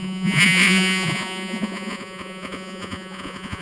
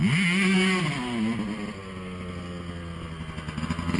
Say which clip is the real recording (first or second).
second